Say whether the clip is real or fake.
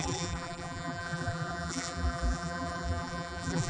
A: fake